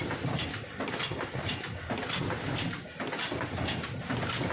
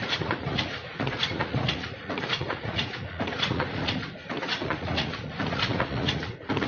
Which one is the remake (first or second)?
second